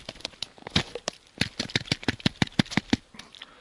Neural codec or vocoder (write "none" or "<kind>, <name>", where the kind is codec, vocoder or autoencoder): vocoder, BigVGAN v2